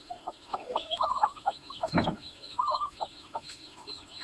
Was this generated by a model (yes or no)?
yes